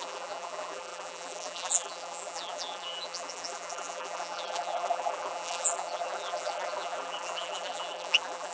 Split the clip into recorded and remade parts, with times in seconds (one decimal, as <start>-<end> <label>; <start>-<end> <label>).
0.0-8.5 remade